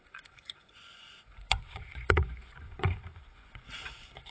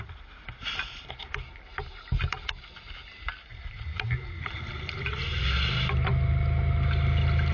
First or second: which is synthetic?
first